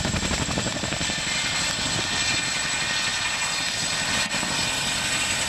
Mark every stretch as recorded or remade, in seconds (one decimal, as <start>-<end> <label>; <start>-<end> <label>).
0.0-5.5 recorded